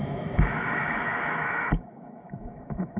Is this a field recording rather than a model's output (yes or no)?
no